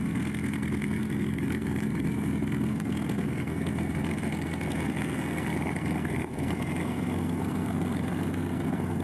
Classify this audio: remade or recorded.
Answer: remade